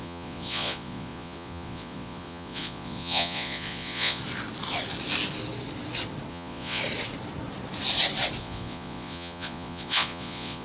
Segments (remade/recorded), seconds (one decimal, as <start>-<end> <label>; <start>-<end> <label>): 0.0-4.2 remade; 4.2-6.3 recorded; 6.3-6.8 remade; 6.8-8.4 recorded; 8.4-10.6 remade